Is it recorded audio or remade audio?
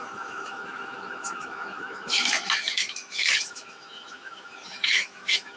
remade